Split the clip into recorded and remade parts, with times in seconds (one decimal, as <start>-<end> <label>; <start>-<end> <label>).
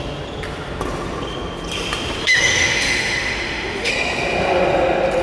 0.0-2.2 recorded; 2.2-3.9 remade; 3.9-5.2 recorded